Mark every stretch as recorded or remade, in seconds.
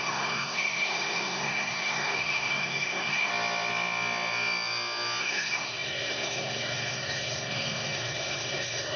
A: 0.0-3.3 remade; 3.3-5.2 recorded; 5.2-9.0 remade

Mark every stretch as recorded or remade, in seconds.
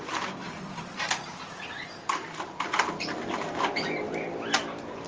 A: 0.0-0.4 recorded; 0.4-1.0 remade; 1.0-5.1 recorded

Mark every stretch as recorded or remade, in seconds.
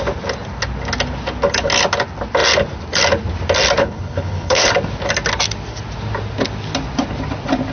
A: 0.0-3.8 recorded; 3.8-4.7 remade; 4.7-7.7 recorded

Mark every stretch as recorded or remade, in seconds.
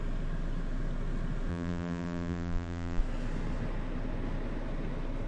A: 0.0-1.5 recorded; 1.5-3.0 remade; 3.0-5.3 recorded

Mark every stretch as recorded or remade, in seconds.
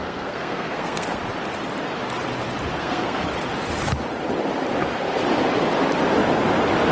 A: 0.0-1.2 remade; 1.2-2.7 recorded; 2.7-3.2 remade; 3.2-6.9 recorded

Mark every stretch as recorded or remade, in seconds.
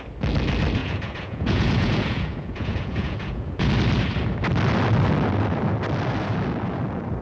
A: 0.0-0.8 recorded; 0.8-3.7 remade; 3.7-7.2 recorded